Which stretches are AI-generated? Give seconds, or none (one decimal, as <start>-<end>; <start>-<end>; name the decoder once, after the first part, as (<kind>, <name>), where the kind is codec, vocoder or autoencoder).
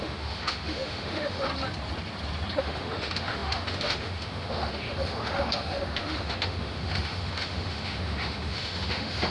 0.0-1.5 (autoencoder, DAC-VAE); 2.6-9.3